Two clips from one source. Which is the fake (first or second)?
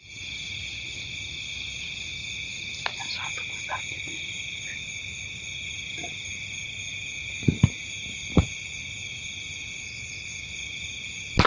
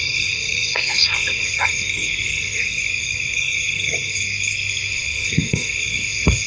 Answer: second